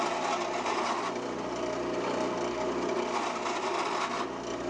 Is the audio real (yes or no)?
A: yes